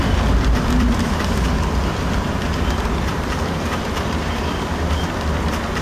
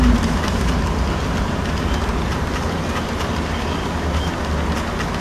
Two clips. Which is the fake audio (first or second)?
first